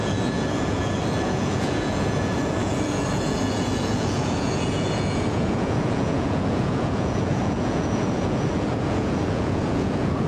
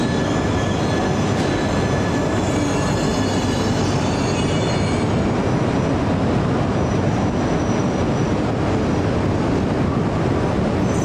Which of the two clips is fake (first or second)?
first